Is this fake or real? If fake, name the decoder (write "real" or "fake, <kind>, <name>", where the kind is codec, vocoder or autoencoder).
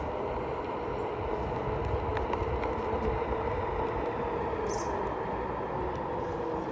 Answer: real